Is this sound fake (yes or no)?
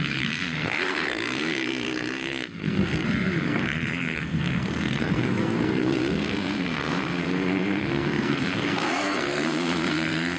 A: yes